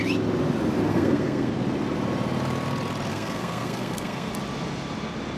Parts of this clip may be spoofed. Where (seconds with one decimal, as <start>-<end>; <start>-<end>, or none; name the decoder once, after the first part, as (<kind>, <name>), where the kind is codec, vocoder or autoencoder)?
0.9-1.5 (codec, SNAC); 3.1-4.3